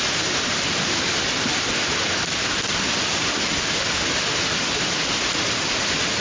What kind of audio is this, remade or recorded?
recorded